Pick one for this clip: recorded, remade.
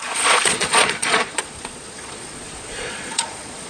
remade